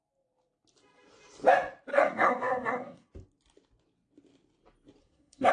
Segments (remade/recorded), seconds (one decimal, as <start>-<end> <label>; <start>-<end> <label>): 0.0-1.9 recorded; 1.9-3.1 remade; 3.1-5.0 recorded; 5.0-5.5 remade